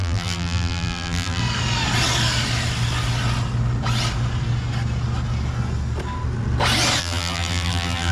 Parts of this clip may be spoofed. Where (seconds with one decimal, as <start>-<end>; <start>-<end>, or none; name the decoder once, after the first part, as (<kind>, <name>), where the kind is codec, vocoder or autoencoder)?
0.0-1.4 (vocoder, BigVGAN v2); 7.0-8.1